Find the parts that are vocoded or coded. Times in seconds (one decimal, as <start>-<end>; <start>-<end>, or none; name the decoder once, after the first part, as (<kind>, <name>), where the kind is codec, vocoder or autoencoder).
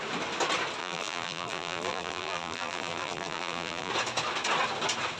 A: 0.8-3.9 (vocoder, BigVGAN v2)